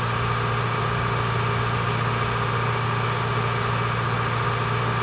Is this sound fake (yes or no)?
no